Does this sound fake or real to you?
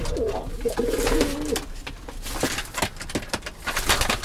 real